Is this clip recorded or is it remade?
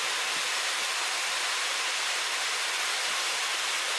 recorded